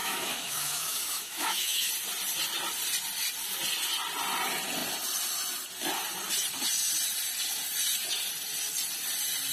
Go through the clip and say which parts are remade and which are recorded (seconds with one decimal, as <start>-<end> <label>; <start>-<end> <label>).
0.0-1.9 remade; 1.9-9.5 recorded

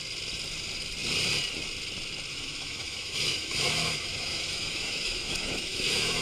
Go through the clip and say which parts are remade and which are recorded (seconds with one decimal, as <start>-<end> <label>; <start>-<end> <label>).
0.0-2.3 recorded; 2.3-6.2 remade

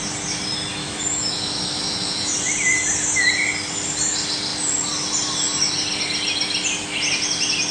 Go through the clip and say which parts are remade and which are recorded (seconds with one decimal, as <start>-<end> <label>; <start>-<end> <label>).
0.0-0.8 recorded; 0.8-2.3 remade; 2.3-7.7 recorded

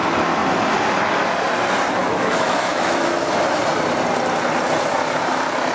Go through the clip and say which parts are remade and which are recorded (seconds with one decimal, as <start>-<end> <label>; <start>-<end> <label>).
0.0-2.0 recorded; 2.0-3.2 remade; 3.2-5.7 recorded